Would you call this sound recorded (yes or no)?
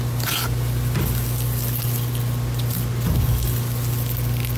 yes